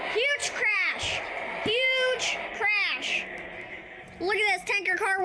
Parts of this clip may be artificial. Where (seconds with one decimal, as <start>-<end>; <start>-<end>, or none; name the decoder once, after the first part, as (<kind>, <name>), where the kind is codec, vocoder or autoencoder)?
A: 0.4-3.5 (vocoder, BigVGAN v2)

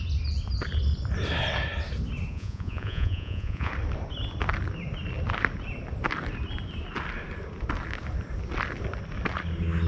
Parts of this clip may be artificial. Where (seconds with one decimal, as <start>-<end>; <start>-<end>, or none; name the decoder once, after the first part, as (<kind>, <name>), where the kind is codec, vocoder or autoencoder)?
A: 2.3-3.7 (vocoder, Vocos)

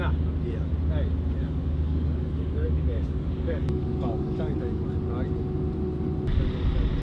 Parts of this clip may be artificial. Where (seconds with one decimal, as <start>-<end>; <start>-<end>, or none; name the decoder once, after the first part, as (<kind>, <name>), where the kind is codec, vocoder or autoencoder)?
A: 1.4-4.9 (codec, DAC)

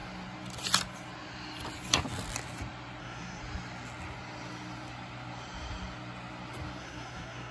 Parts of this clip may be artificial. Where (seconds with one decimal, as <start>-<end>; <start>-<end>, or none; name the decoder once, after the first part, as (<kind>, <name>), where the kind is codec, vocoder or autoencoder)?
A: 3.0-3.4 (codec, SNAC); 6.8-7.5

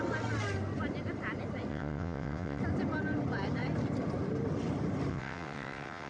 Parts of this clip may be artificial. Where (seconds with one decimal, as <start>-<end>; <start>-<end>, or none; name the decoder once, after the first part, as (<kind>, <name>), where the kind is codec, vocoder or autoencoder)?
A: 1.7-2.6 (vocoder, WaveNeXt); 5.1-6.1

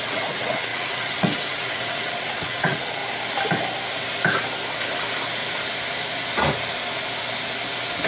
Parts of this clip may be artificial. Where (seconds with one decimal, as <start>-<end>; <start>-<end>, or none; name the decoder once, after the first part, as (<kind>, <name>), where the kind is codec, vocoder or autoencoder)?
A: 0.0-3.0 (vocoder, WaveNeXt)

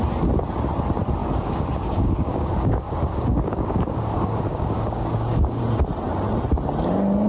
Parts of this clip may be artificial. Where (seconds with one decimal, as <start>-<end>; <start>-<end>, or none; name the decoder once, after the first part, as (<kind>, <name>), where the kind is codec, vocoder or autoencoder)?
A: 1.2-5.6 (codec, DAC)

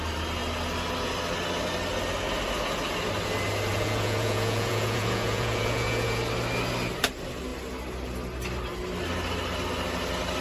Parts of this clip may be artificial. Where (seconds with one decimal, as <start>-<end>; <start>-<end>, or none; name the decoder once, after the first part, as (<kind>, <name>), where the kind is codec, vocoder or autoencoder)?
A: 3.7-6.2 (vocoder, Vocos)